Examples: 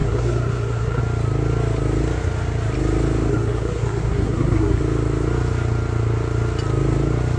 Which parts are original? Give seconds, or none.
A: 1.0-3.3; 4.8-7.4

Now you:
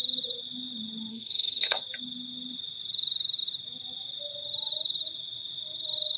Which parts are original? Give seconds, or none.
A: 0.0-1.1; 1.8-6.2

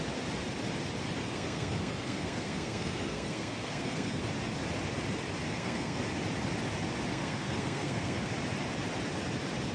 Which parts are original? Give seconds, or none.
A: 0.0-1.2; 4.2-5.5; 6.0-7.1; 8.3-9.7

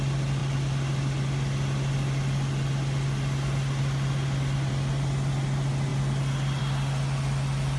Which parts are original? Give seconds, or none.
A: 0.0-7.8

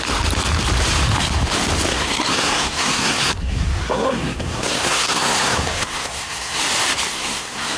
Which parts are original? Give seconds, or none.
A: 0.0-1.9; 6.6-7.1

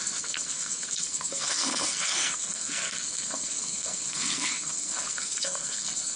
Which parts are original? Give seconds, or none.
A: none